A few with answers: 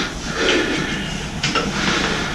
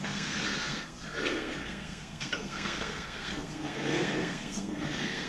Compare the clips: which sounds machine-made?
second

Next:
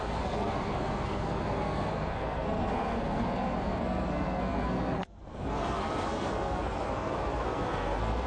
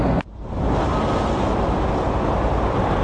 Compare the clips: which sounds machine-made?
first